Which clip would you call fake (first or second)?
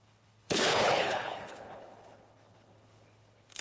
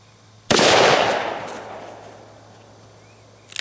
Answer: first